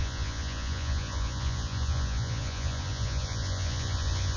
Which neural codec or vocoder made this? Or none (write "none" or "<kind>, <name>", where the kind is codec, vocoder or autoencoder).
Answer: vocoder, Vocos